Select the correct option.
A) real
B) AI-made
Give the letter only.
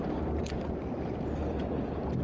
A